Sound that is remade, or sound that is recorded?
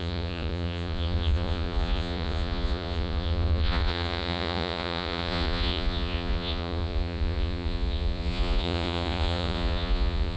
remade